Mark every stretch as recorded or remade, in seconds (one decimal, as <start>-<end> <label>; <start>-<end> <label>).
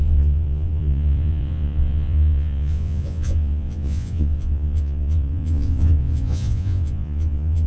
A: 0.0-7.7 remade